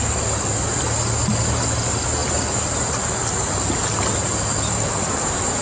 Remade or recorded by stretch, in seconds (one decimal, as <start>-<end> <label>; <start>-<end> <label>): 0.0-5.6 recorded

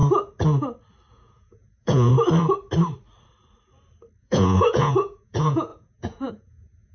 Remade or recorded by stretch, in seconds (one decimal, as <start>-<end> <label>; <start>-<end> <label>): 0.0-1.1 recorded; 1.1-2.1 remade; 2.1-4.2 recorded; 4.2-6.9 remade